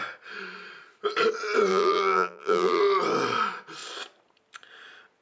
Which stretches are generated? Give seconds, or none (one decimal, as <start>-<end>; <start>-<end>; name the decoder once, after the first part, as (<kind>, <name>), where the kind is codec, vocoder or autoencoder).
1.7-2.8 (vocoder, BigVGAN v2)